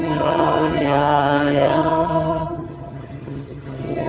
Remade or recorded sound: remade